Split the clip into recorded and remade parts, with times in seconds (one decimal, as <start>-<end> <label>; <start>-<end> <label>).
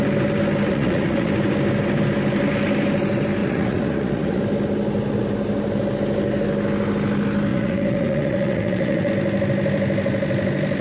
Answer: 0.0-0.7 recorded; 0.7-1.3 remade; 1.3-3.4 recorded; 3.4-4.4 remade; 4.4-7.5 recorded; 7.5-9.1 remade; 9.1-10.8 recorded